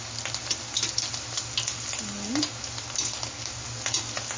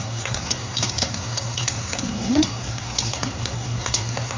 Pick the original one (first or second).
first